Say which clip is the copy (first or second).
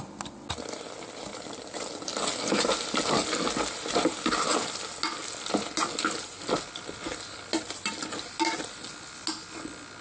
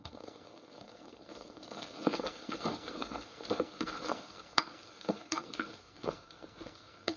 second